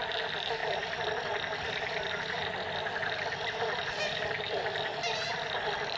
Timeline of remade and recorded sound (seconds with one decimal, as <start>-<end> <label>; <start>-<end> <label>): 0.0-6.0 recorded